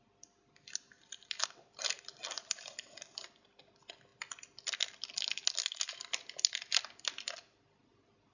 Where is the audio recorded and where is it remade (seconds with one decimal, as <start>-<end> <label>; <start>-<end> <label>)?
0.0-8.3 recorded